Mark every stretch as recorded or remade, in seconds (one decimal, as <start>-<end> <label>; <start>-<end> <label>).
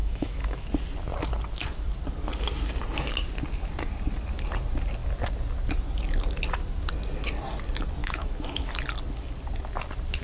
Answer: 0.0-0.7 remade; 0.7-8.0 recorded; 8.0-8.7 remade; 8.7-10.2 recorded